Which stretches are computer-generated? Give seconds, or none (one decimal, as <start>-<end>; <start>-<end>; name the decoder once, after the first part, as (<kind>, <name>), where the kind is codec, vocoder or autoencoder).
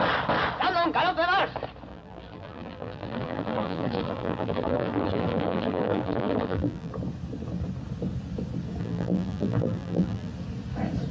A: 1.9-6.9 (vocoder, BigVGAN v2); 8.8-10.3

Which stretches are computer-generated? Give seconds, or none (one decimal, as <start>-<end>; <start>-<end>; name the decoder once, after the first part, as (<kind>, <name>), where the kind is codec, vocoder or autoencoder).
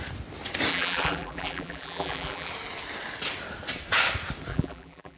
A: 0.7-2.5 (vocoder, BigVGAN v2); 4.5-5.2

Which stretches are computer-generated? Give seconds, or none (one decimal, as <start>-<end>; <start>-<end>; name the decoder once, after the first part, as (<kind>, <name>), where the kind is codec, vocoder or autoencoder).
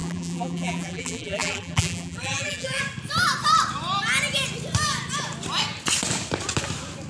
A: 0.0-2.8 (vocoder, BigVGAN v2)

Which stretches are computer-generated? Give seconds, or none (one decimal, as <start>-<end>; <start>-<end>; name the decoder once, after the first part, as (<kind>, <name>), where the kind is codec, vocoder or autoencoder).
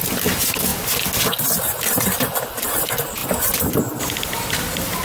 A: none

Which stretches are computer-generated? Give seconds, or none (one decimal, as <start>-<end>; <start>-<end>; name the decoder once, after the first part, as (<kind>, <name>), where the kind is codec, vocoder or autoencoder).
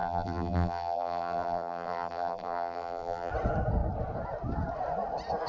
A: 0.0-3.3 (vocoder, BigVGAN v2)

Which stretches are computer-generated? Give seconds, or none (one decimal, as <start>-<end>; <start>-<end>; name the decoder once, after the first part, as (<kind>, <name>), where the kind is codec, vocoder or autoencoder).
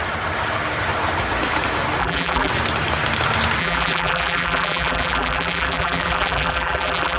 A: 2.0-2.5 (vocoder, BigVGAN v2); 3.6-7.2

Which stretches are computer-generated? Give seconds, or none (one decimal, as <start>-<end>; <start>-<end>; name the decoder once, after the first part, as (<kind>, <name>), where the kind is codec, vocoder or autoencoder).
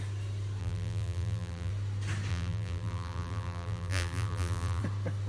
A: 0.6-1.7 (vocoder, BigVGAN v2); 2.3-4.8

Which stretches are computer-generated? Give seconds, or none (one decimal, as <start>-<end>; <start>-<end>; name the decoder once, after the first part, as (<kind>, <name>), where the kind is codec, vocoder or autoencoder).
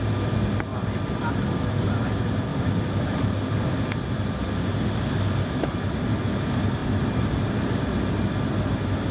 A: 2.5-3.2 (vocoder, BigVGAN v2); 6.8-8.0